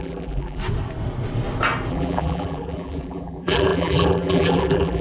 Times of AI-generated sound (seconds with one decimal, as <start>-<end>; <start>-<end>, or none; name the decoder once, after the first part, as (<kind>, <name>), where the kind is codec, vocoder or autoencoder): 0.0-0.6 (vocoder, BigVGAN v2); 1.9-5.0